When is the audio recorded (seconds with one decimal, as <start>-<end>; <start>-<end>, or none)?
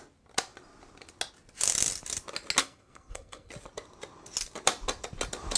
0.0-2.6; 3.5-5.6